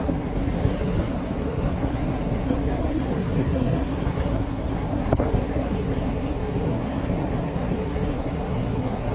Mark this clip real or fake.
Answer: fake